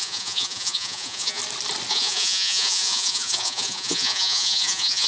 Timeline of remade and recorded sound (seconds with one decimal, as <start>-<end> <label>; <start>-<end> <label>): 0.0-1.4 remade; 1.4-1.9 recorded; 1.9-5.1 remade